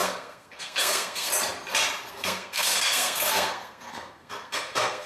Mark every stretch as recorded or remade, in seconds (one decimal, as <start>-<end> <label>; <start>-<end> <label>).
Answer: 0.0-1.3 remade; 1.3-2.1 recorded; 2.1-5.1 remade

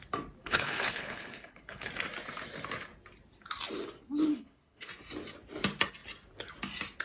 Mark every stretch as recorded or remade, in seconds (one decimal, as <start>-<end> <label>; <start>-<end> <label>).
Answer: 0.0-0.4 recorded; 0.4-1.9 remade; 1.9-4.3 recorded; 4.3-4.9 remade; 4.9-7.0 recorded

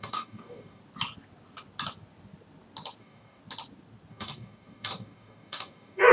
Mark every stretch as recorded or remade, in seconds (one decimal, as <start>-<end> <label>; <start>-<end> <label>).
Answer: 0.0-0.8 remade; 0.8-3.0 recorded; 3.0-3.4 remade; 3.4-4.1 recorded; 4.1-6.1 remade

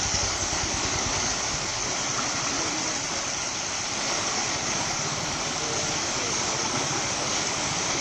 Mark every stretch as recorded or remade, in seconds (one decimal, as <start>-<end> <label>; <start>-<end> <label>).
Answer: 0.0-1.8 remade; 1.8-3.9 recorded; 3.9-8.0 remade

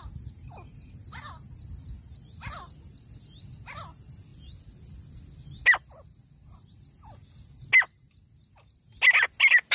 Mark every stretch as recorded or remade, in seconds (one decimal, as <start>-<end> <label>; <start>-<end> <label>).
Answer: 0.0-9.7 recorded

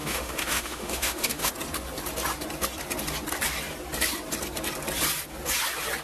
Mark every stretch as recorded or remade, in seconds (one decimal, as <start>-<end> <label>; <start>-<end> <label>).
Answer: 0.0-1.5 remade; 1.5-6.0 recorded

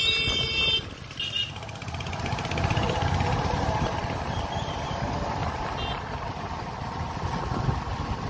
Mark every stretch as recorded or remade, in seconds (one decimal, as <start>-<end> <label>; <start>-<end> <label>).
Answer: 0.0-2.7 recorded; 2.7-4.0 remade; 4.0-8.3 recorded